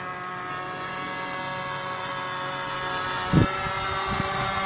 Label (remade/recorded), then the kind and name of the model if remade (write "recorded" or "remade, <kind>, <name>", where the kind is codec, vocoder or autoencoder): recorded